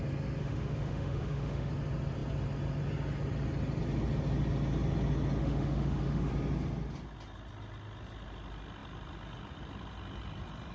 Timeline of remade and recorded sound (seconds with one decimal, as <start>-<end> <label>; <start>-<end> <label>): 0.0-0.4 recorded; 0.4-1.7 remade; 1.7-5.4 recorded; 5.4-6.3 remade; 6.3-10.7 recorded